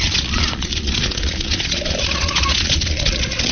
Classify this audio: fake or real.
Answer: fake